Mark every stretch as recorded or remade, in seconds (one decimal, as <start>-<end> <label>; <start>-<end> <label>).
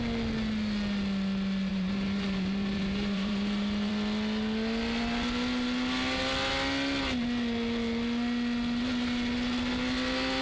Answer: 0.0-1.7 recorded; 1.7-3.9 remade; 3.9-10.4 recorded